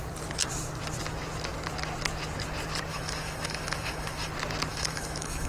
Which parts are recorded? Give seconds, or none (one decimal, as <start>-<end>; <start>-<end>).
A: 0.0-2.9; 4.3-4.7